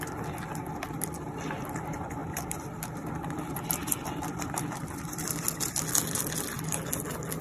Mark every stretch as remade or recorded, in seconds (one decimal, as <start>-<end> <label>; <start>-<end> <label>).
0.0-2.2 recorded; 2.2-5.7 remade; 5.7-7.4 recorded